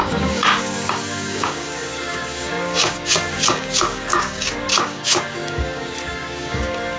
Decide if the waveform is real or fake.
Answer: fake